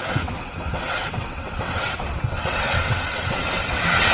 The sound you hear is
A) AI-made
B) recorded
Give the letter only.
A